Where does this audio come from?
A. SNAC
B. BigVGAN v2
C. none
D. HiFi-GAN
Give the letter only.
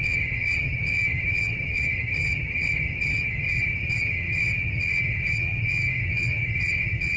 D